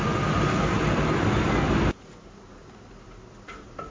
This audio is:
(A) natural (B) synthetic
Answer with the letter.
A